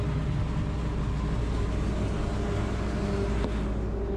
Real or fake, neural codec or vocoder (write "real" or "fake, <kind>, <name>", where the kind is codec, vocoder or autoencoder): real